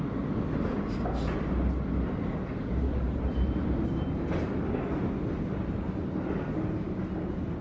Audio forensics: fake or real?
real